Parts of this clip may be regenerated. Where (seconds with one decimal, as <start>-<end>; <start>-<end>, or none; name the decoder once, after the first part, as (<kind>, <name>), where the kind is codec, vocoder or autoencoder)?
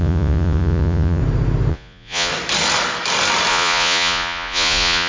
0.0-1.2 (vocoder, Vocos); 1.7-2.3; 3.5-5.1